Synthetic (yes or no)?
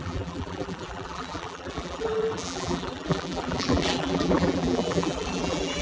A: yes